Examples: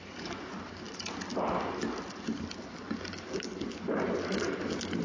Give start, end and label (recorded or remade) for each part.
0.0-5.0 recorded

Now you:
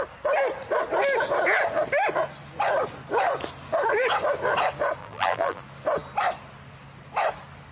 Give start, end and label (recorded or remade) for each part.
0.0-5.0 recorded; 5.0-5.6 remade; 5.6-7.7 recorded

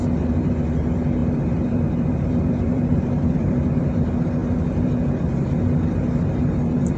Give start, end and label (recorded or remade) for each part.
0.0-1.2 recorded; 1.2-3.6 remade; 3.6-4.4 recorded; 4.4-4.9 remade; 4.9-7.0 recorded

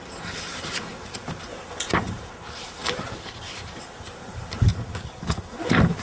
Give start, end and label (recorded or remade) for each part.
0.0-1.5 remade; 1.5-2.1 recorded; 2.1-2.8 remade; 2.8-3.4 recorded; 3.4-4.7 remade; 4.7-5.6 recorded; 5.6-6.0 remade

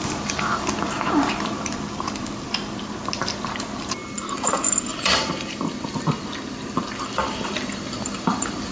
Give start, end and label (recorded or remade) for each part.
0.0-4.9 recorded; 4.9-8.7 remade

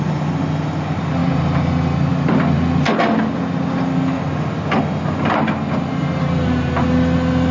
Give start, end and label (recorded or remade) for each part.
0.0-1.2 recorded; 1.2-1.7 remade; 1.7-7.5 recorded

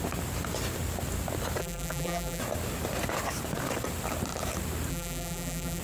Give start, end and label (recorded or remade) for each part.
0.0-1.6 recorded; 1.6-2.4 remade; 2.4-4.9 recorded; 4.9-5.8 remade

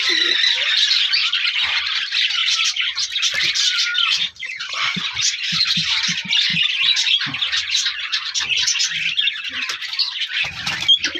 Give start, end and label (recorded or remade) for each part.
0.0-3.9 recorded; 3.9-5.6 remade; 5.6-11.2 recorded